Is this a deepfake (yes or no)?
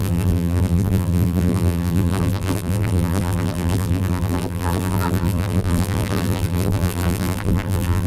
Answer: yes